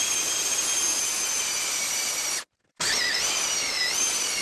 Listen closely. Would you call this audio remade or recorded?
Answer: recorded